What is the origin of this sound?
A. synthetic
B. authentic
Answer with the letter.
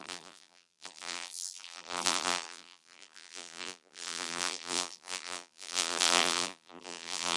A